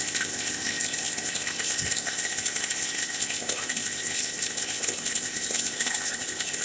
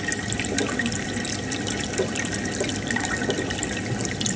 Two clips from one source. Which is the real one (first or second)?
second